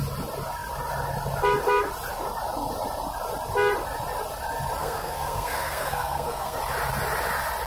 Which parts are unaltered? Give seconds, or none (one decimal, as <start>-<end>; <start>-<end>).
0.0-4.8; 6.6-7.7